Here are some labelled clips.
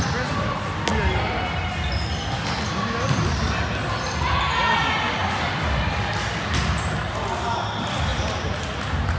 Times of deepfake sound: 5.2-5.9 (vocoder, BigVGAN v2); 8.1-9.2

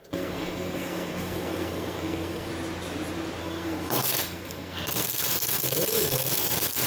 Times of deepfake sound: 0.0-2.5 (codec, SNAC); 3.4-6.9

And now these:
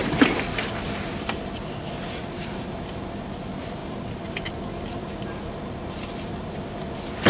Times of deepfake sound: 0.0-7.3 (vocoder, BigVGAN v2)

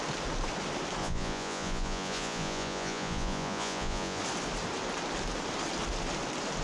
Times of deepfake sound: 1.0-4.2 (vocoder, Vocos)